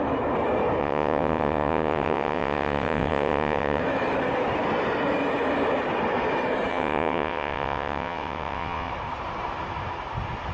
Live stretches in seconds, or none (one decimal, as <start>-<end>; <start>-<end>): 0.0-0.8; 3.8-6.7; 8.9-10.5